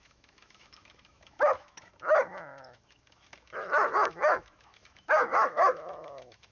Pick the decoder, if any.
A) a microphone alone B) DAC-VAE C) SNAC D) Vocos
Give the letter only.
B